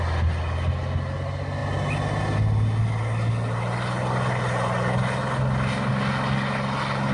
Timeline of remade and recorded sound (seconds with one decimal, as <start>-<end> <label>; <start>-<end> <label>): 0.0-7.1 recorded

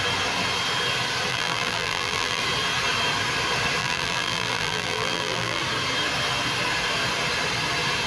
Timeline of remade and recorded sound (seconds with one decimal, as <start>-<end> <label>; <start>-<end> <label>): 0.0-1.3 recorded; 1.3-2.4 remade; 2.4-3.8 recorded; 3.8-5.6 remade; 5.6-8.1 recorded

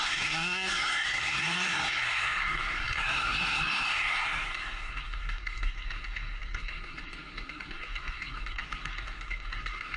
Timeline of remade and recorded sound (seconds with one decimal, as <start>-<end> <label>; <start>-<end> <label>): 0.0-10.0 remade